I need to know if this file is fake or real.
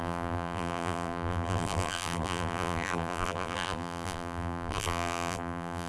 fake